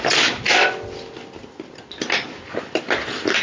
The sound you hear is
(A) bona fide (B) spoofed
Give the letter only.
A